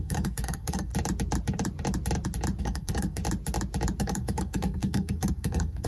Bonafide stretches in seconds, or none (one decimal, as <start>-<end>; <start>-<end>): 0.9-2.6; 3.2-4.0